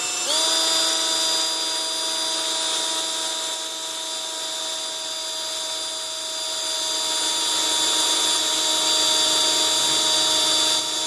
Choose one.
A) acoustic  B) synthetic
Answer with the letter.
A